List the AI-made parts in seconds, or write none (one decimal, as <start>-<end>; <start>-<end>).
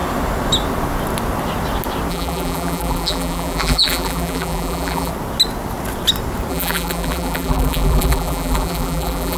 2.1-5.1; 6.5-9.4